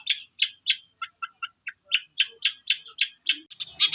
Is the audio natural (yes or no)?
yes